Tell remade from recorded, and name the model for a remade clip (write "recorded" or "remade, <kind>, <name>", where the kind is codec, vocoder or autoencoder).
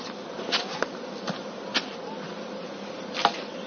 remade, vocoder, BigVGAN v2